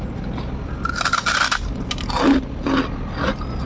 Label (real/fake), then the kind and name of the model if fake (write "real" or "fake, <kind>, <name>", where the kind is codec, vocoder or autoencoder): real